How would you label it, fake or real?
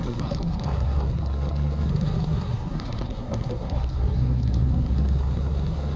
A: fake